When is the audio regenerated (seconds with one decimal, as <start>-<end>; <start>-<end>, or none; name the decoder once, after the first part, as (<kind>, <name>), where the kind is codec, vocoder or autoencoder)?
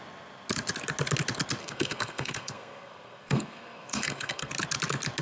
1.6-4.5 (codec, SNAC)